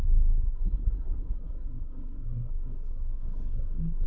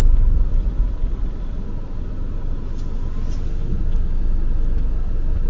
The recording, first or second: second